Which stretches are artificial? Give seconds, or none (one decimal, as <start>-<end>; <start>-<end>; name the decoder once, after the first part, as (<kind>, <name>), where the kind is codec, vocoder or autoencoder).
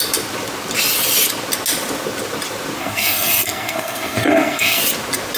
2.8-4.8 (codec, SNAC)